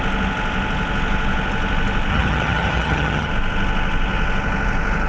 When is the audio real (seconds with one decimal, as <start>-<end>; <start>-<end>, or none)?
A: 0.0-2.1; 3.3-5.1

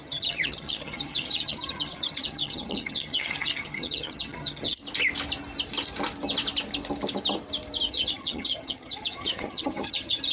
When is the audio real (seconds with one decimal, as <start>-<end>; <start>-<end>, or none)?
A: 4.8-7.9

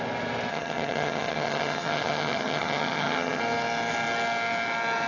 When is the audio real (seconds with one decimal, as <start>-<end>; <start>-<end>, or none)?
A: 0.0-0.5; 3.4-5.1